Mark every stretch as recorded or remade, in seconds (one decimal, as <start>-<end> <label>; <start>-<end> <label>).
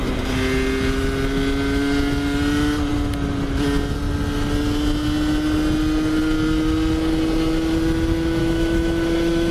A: 0.0-8.4 recorded; 8.4-9.5 remade